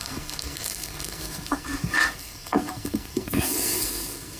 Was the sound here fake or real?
fake